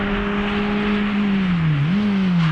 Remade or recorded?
recorded